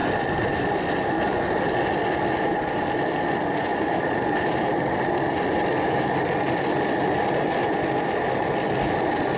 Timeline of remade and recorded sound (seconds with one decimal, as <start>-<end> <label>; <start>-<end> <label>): 0.0-3.7 recorded; 3.7-4.6 remade; 4.6-9.4 recorded